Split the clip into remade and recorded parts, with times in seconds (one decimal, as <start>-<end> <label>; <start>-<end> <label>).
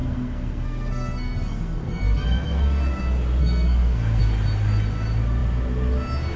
0.0-3.0 remade; 3.0-3.4 recorded; 3.4-4.2 remade; 4.2-6.4 recorded